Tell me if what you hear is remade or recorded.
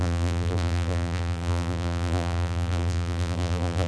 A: remade